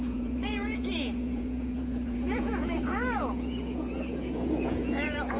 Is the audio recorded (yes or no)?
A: no